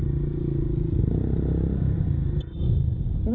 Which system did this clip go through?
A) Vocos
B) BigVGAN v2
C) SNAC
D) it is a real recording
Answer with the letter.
D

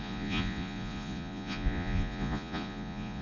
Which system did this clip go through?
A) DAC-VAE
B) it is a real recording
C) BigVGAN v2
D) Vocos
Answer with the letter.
D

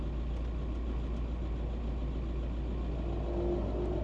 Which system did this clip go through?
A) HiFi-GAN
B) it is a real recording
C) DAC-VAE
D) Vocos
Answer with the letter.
B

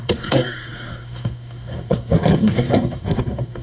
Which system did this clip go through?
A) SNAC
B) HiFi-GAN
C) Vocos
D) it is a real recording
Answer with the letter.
A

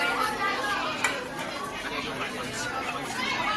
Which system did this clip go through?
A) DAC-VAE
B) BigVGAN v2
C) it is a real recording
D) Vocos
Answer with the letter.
C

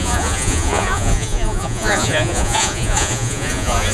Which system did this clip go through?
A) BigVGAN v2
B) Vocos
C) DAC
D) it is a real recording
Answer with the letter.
B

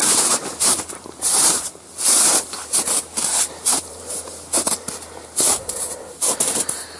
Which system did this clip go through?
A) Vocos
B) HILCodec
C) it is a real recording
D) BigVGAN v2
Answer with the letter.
D